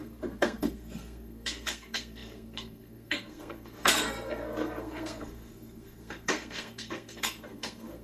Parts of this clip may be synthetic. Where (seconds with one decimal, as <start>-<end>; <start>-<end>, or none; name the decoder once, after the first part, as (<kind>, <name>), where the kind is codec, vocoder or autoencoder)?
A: 0.0-8.0 (codec, SNAC)